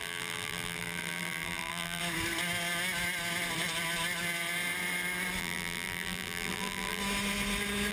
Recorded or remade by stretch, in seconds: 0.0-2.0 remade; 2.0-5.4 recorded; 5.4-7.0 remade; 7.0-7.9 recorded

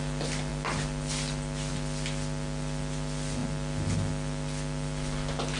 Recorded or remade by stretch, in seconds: 0.0-5.6 recorded

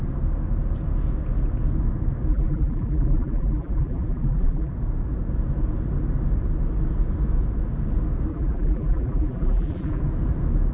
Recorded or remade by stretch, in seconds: 0.0-2.3 recorded; 2.3-4.7 remade; 4.7-8.3 recorded; 8.3-10.0 remade; 10.0-10.7 recorded

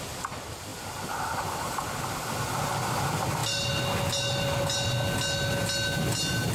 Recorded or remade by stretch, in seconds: 0.0-3.4 remade; 3.4-6.5 recorded

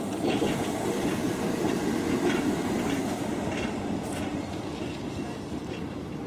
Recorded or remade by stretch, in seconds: 0.0-4.7 remade; 4.7-5.6 recorded; 5.6-6.3 remade